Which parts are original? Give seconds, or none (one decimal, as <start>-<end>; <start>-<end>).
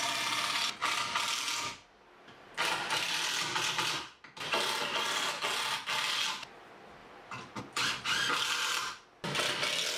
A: 0.0-0.8; 3.9-7.0; 7.6-10.0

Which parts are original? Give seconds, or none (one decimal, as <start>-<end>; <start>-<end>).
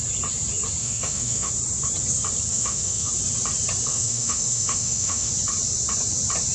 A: 0.0-0.8; 1.5-2.5; 3.1-3.9; 5.3-6.5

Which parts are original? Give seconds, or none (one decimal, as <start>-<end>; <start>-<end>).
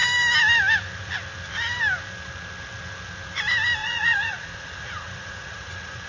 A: 0.0-3.8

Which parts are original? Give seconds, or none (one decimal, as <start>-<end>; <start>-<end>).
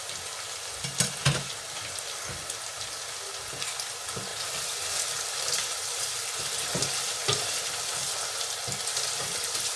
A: 0.0-9.8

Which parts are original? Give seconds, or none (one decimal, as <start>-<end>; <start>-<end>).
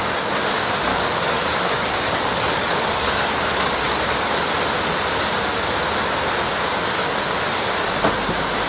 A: 0.0-0.9; 3.8-8.7